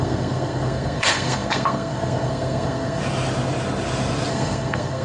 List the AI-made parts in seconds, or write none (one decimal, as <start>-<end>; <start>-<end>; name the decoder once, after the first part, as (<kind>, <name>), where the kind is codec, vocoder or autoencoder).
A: 0.0-3.0 (codec, SNAC); 4.3-5.0

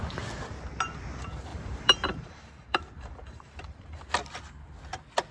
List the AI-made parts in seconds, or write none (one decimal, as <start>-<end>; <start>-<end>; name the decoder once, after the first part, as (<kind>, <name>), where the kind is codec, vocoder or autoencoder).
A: 1.5-4.1 (vocoder, BigVGAN v2)

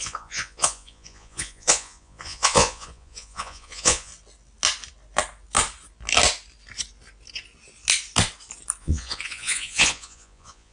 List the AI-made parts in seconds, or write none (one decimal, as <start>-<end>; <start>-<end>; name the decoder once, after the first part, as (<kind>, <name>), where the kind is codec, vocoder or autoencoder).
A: 0.0-4.1 (vocoder, Vocos); 8.8-10.7

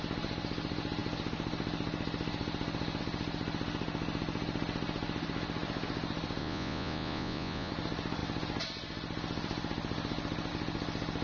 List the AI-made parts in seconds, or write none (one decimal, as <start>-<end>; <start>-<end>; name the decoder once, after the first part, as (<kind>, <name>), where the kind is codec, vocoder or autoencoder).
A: 6.4-7.7 (vocoder, Vocos)

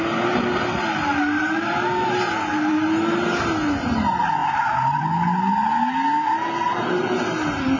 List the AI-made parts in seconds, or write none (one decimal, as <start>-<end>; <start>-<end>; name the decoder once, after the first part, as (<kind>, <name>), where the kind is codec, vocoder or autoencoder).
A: none

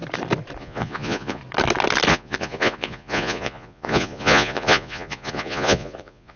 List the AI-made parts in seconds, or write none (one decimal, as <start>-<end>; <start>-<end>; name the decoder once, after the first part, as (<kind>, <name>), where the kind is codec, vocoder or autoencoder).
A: 0.6-1.4 (vocoder, Vocos); 2.1-6.4

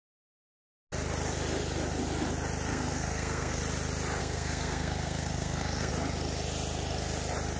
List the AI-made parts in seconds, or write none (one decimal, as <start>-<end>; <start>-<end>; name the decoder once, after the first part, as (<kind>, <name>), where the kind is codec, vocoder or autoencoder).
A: 2.7-3.6 (codec, SNAC); 4.2-5.9